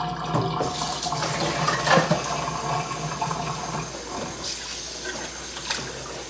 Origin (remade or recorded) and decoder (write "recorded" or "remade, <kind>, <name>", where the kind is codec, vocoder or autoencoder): recorded